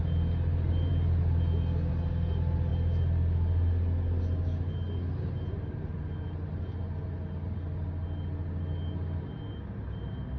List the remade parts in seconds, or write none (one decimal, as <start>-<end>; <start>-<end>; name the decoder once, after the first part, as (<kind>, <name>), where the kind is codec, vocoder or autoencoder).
none